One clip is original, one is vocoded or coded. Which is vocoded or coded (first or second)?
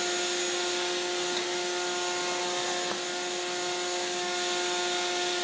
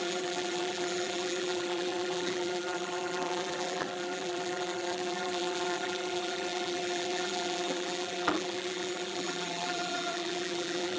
second